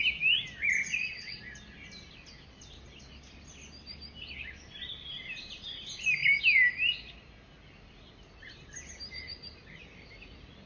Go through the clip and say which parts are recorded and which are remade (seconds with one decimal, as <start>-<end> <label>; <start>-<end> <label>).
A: 0.0-0.9 recorded; 0.9-1.4 remade; 1.4-10.7 recorded